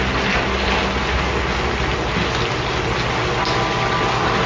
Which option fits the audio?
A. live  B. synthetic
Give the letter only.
A